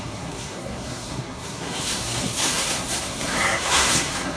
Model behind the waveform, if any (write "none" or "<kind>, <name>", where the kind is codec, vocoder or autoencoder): codec, SNAC